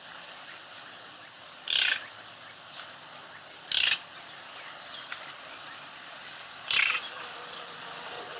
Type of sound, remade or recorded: recorded